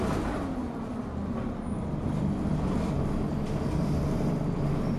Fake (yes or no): no